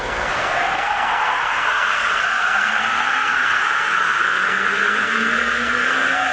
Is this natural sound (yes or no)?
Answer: no